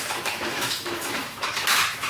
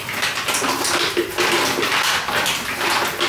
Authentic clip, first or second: second